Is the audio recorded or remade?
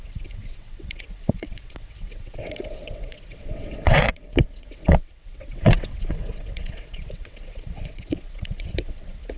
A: remade